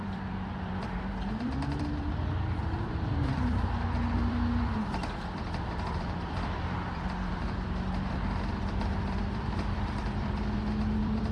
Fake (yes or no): yes